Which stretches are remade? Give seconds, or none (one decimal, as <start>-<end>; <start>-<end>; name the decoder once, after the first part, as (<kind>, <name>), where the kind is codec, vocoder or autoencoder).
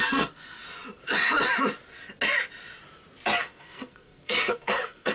0.0-0.6 (codec, SNAC); 3.4-5.1